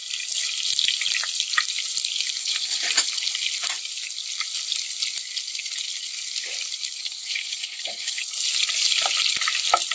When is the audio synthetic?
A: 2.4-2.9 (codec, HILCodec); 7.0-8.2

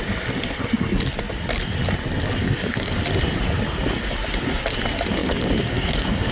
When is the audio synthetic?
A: 2.4-3.0 (codec, DAC); 5.2-6.3